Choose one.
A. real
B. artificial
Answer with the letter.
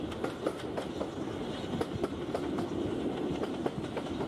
A